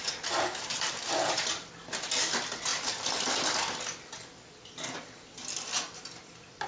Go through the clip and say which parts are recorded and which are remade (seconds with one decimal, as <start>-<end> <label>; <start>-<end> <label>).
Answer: 0.0-6.7 recorded